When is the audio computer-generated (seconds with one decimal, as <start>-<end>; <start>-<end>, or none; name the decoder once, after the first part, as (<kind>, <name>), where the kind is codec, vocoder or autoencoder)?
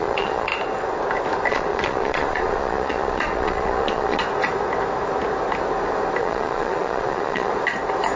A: 0.0-0.5 (vocoder, Vocos); 1.5-4.2; 6.2-7.5